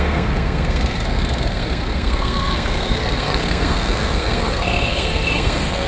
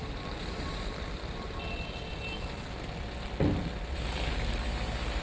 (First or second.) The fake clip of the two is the first